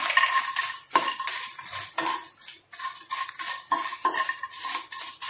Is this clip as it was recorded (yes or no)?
yes